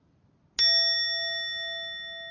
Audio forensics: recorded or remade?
recorded